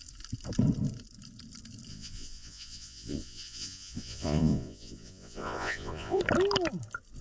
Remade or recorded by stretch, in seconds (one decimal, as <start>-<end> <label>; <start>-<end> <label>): 0.0-1.9 recorded; 1.9-6.2 remade; 6.2-7.2 recorded